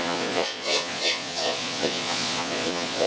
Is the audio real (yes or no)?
no